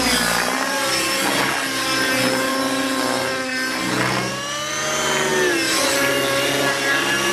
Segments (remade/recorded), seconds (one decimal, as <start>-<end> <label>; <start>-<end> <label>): 0.0-7.3 recorded